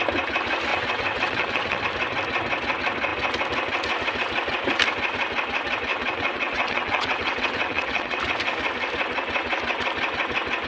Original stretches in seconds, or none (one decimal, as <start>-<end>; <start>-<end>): 0.0-0.7; 1.8-5.9; 8.2-10.7